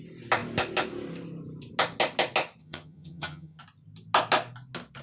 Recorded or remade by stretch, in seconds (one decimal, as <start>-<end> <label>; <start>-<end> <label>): 0.0-2.6 recorded; 2.6-3.6 remade; 3.6-5.0 recorded